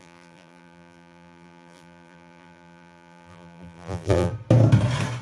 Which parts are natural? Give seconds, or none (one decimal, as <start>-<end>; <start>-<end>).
4.3-5.2